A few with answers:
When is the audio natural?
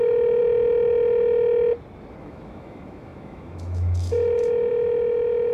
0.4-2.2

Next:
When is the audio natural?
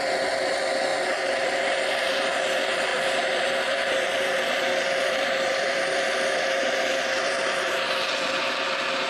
0.0-0.9; 2.4-2.9; 8.1-9.1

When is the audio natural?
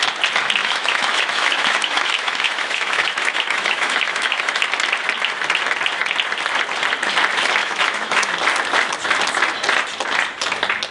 0.0-0.6; 4.6-7.6; 8.3-10.9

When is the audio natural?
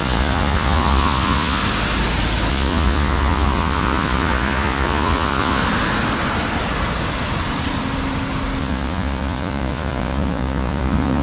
1.6-2.5; 5.6-8.6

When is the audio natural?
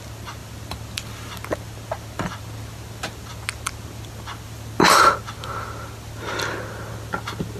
0.0-7.6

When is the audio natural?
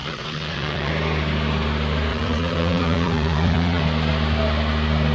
0.9-2.1; 3.8-5.1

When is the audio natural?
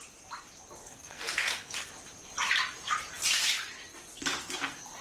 0.0-0.8; 1.9-4.1